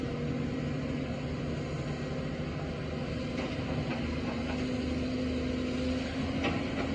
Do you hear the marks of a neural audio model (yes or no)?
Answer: no